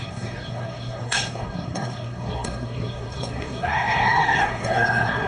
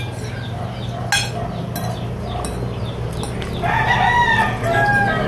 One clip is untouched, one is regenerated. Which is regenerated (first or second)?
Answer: first